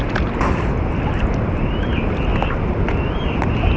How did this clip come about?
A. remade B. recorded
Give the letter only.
B